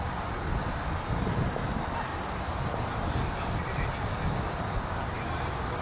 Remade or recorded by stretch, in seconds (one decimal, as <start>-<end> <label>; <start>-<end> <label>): 0.0-5.8 recorded